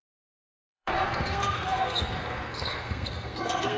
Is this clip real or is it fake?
fake